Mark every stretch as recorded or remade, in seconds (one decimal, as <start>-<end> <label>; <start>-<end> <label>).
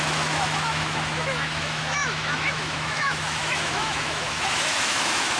0.0-5.4 remade